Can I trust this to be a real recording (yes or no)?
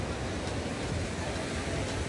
yes